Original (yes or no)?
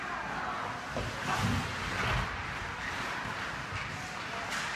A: yes